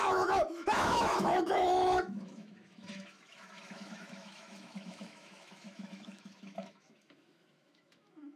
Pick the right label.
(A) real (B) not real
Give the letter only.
B